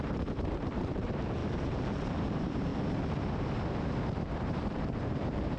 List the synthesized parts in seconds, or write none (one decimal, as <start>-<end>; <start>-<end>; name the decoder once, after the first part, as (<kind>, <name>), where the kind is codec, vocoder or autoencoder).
0.0-1.4 (vocoder, BigVGAN v2); 2.1-2.7; 4.4-5.6